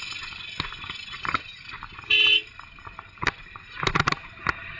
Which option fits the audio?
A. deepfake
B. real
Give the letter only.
B